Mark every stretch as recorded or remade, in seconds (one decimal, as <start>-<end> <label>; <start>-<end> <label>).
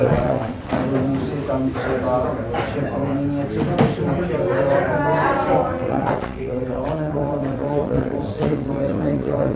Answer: 0.0-0.8 remade; 0.8-5.6 recorded; 5.6-9.6 remade